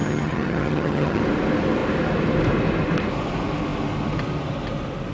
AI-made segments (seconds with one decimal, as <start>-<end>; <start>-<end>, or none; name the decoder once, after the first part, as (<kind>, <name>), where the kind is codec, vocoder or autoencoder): 0.0-1.2 (vocoder, HiFi-GAN)